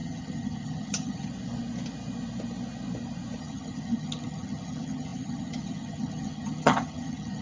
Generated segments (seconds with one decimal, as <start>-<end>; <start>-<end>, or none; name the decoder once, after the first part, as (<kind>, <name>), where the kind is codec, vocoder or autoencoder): 0.0-1.3 (vocoder, HiFi-GAN); 3.4-7.4